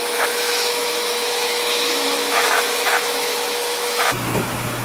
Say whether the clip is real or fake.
fake